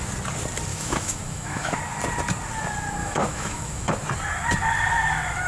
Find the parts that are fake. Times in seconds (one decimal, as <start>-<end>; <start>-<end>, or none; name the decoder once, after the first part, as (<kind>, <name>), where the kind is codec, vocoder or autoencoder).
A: 0.7-1.8 (autoencoder, DAC-VAE); 3.0-3.9